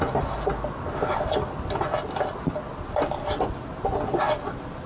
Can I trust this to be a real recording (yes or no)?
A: yes